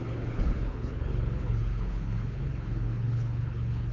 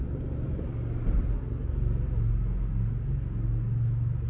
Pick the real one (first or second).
second